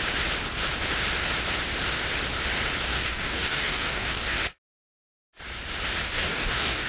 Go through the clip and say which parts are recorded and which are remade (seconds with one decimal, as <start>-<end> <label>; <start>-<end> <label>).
0.0-2.9 recorded; 2.9-4.4 remade; 4.4-6.0 recorded; 6.0-6.9 remade